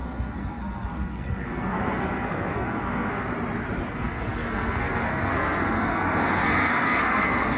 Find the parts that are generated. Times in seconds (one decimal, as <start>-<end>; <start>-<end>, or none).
0.0-3.3; 3.9-7.6